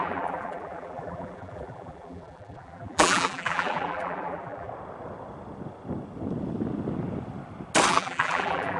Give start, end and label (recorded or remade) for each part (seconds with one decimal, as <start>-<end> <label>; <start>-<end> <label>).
0.0-4.7 remade; 4.7-7.9 recorded; 7.9-8.8 remade